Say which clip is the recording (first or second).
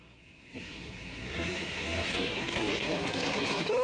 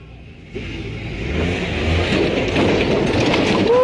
second